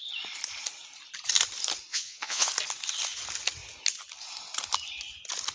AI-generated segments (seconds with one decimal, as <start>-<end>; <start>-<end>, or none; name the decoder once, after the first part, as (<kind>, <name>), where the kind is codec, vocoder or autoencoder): 1.9-2.5 (vocoder, Vocos)